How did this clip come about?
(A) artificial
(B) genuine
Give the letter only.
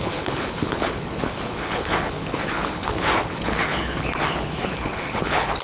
A